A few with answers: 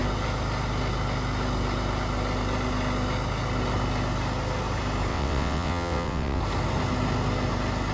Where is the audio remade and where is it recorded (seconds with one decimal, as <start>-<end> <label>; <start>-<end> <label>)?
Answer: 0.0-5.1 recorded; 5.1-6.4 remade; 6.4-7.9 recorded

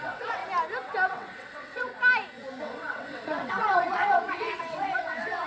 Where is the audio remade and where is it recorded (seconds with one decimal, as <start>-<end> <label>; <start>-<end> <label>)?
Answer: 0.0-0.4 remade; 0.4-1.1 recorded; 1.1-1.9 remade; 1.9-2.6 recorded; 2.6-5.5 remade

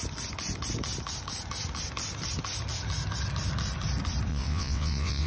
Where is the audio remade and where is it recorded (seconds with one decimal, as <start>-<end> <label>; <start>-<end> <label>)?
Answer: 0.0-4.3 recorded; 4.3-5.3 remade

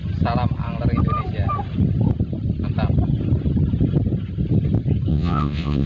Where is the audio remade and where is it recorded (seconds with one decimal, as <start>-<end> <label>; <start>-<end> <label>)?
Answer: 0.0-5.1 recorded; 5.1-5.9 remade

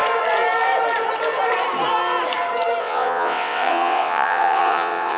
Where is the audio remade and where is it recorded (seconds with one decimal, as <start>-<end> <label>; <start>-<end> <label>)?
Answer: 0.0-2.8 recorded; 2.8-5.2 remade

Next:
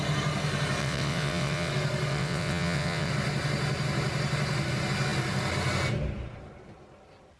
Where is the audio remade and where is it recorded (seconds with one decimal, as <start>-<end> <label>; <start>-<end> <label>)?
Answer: 0.0-0.8 recorded; 0.8-1.7 remade; 1.7-2.1 recorded; 2.1-3.1 remade; 3.1-7.4 recorded

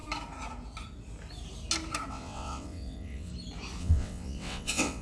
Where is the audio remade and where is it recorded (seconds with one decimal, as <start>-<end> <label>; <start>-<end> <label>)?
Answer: 0.0-2.1 recorded; 2.1-3.3 remade; 3.3-3.8 recorded; 3.8-5.0 remade

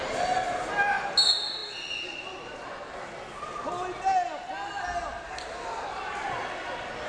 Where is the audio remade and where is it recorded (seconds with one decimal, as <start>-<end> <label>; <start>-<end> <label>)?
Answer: 0.0-7.1 recorded